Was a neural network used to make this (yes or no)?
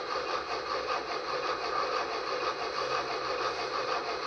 no